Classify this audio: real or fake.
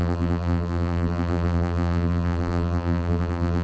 fake